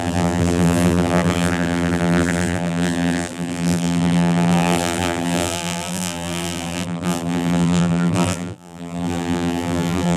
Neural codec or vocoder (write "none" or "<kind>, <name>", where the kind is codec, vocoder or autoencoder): vocoder, BigVGAN v2